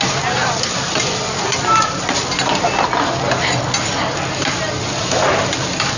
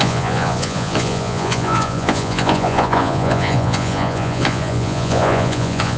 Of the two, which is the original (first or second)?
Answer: first